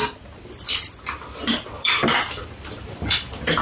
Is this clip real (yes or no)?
no